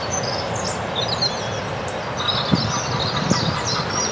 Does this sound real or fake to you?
real